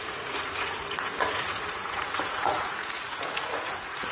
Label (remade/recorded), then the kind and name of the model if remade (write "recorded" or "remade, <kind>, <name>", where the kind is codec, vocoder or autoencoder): remade, vocoder, Vocos